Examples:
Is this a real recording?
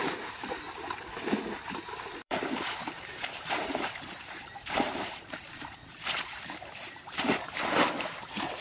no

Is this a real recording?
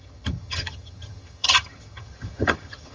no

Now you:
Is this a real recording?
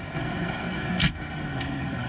no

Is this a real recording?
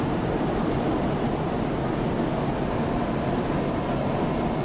yes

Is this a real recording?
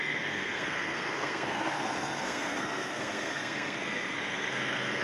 no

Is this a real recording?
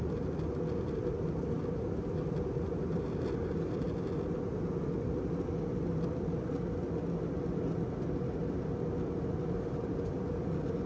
yes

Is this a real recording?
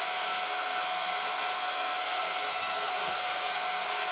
no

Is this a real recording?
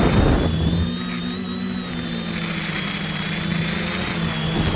yes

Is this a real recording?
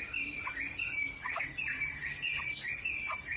yes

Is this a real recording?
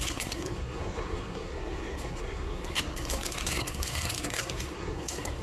no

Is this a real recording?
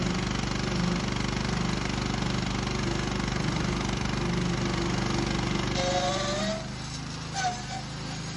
yes